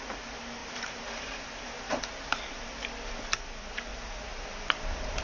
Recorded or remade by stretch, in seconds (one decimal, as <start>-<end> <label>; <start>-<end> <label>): 0.0-0.6 recorded; 0.6-2.0 remade; 2.0-3.9 recorded; 3.9-5.2 remade